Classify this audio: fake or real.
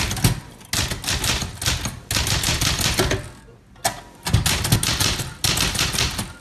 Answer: real